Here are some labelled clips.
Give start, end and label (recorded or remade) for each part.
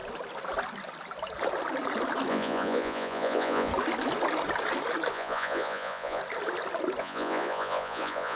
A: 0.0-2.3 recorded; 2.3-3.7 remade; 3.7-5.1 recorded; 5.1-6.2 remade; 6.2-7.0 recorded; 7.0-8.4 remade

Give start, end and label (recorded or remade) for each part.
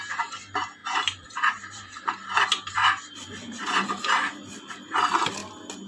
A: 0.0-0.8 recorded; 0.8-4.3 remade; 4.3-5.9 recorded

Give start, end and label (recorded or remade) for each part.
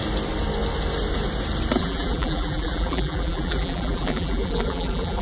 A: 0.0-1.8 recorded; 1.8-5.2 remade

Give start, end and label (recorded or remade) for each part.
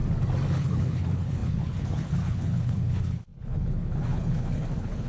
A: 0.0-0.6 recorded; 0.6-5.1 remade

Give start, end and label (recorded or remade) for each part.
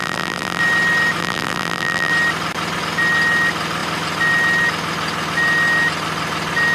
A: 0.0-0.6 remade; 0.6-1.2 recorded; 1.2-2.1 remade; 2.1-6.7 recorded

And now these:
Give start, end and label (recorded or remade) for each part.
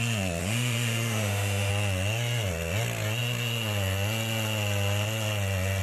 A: 0.0-0.4 recorded; 0.4-1.7 remade; 1.7-5.8 recorded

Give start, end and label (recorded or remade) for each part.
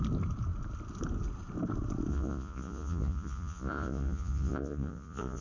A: 0.0-2.1 recorded; 2.1-5.4 remade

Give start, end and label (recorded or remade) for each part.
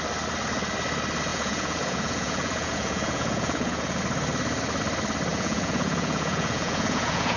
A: 0.0-1.3 recorded; 1.3-4.0 remade; 4.0-5.3 recorded; 5.3-7.4 remade